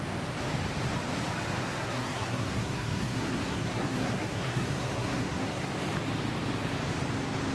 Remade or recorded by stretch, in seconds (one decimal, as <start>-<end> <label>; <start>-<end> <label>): 0.0-1.6 recorded; 1.6-5.7 remade; 5.7-7.5 recorded